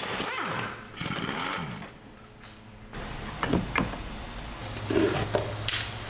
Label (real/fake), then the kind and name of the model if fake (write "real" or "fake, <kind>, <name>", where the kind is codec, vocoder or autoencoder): real